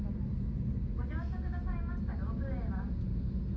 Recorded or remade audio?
recorded